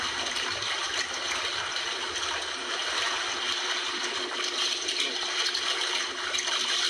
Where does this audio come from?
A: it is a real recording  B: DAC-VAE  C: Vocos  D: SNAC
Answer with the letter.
A